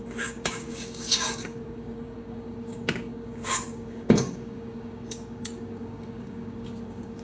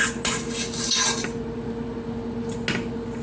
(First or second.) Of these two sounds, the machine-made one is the first